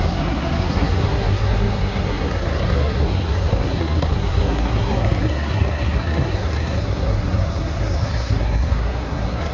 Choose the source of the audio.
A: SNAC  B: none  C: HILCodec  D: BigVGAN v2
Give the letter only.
A